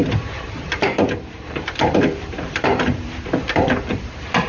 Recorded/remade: remade